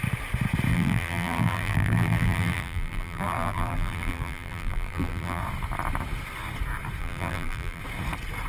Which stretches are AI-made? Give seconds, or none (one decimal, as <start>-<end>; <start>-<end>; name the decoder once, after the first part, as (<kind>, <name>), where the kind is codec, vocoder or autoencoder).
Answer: 0.7-5.4 (vocoder, BigVGAN v2); 7.0-7.8